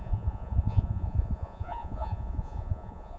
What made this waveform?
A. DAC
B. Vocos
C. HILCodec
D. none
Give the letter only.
B